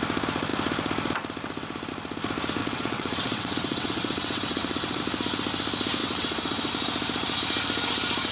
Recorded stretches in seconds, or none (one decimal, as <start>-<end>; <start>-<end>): 0.0-2.6; 5.0-6.0; 6.7-8.3